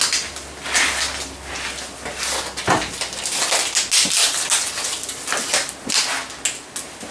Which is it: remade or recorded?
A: recorded